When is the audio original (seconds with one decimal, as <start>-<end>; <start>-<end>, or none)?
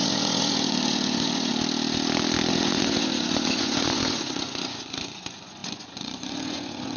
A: 1.5-2.5